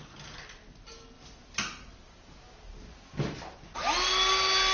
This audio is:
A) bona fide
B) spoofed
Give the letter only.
A